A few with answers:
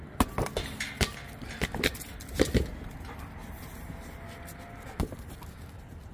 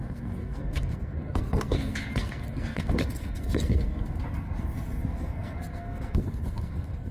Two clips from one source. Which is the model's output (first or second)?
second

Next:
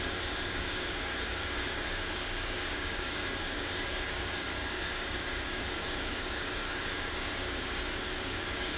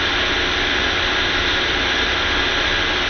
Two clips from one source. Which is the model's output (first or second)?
first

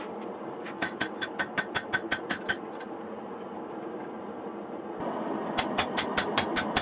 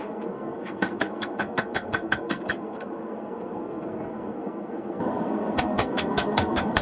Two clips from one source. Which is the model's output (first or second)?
second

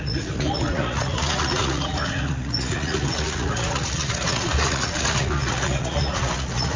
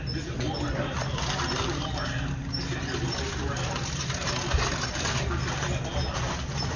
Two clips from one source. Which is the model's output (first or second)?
first